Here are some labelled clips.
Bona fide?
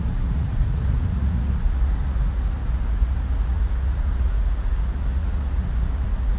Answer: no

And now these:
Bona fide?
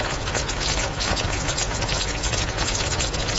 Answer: no